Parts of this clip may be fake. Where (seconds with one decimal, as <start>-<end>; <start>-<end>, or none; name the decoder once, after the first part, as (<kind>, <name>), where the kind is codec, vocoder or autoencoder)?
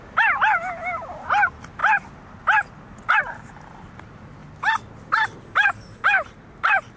0.0-1.8 (vocoder, BigVGAN v2); 3.2-4.4; 5.4-7.0